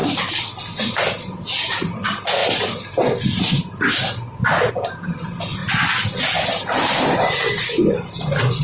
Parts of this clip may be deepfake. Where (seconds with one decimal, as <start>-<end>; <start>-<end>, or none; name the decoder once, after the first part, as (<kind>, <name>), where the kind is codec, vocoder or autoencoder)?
1.0-2.4 (vocoder, BigVGAN v2); 4.7-8.6